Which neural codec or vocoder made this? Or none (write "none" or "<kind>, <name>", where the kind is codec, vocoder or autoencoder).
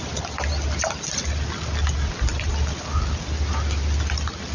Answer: none